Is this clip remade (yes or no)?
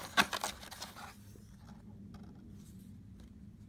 no